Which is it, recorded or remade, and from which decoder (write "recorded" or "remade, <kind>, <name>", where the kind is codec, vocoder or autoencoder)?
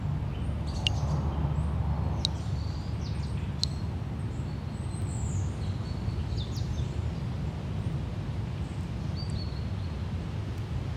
recorded